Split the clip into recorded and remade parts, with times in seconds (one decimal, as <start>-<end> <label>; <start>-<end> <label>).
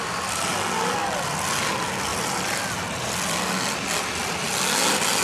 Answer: 0.0-2.1 recorded; 2.1-2.6 remade; 2.6-5.2 recorded